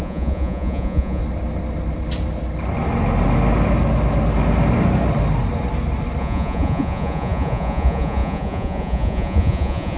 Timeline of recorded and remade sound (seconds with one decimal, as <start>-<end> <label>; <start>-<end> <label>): 0.0-1.2 remade; 1.2-6.2 recorded; 6.2-10.0 remade

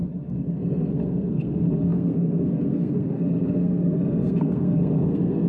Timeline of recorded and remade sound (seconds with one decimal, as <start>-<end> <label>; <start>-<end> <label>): 0.0-0.6 recorded; 0.6-5.5 remade

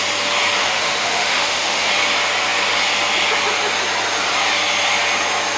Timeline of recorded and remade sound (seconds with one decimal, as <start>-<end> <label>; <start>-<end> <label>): 0.0-0.6 recorded; 0.6-1.9 remade; 1.9-5.6 recorded

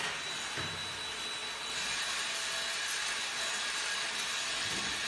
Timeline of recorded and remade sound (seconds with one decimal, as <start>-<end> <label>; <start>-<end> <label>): 0.0-5.1 recorded

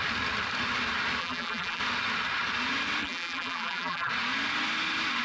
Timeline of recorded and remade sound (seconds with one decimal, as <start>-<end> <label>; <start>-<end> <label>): 0.0-1.2 recorded; 1.2-1.8 remade; 1.8-3.0 recorded; 3.0-4.1 remade; 4.1-5.2 recorded

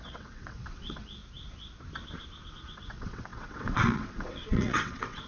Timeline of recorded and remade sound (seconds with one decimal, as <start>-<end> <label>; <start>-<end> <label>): 0.0-1.2 remade; 1.2-2.5 recorded; 2.5-5.3 remade

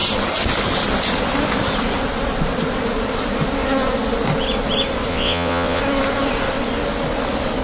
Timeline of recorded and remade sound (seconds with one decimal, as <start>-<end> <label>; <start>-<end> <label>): 0.0-5.1 recorded; 5.1-5.8 remade; 5.8-7.6 recorded